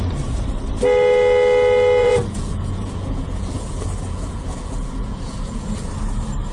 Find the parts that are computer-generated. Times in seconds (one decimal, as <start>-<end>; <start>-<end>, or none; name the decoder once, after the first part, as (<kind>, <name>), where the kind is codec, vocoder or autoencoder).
2.0-5.9 (vocoder, Vocos)